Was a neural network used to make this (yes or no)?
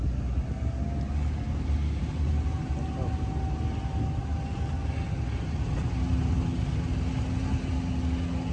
no